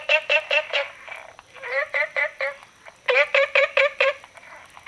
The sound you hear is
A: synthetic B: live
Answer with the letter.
A